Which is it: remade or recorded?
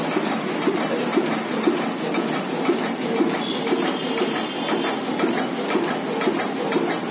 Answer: recorded